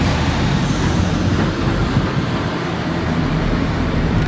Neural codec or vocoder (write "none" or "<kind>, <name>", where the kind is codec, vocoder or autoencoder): vocoder, BigVGAN v2